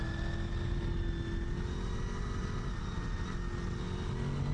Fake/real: real